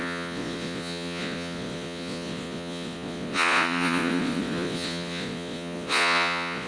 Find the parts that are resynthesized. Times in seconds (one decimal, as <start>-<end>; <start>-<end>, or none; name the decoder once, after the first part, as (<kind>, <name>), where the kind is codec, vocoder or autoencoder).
0.0-6.7 (vocoder, Vocos)